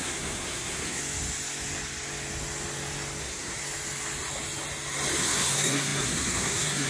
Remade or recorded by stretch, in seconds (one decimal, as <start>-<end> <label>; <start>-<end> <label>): 0.0-1.0 remade; 1.0-3.2 recorded; 3.2-3.6 remade; 3.6-5.2 recorded; 5.2-6.9 remade